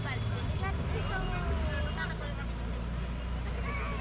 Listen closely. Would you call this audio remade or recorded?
recorded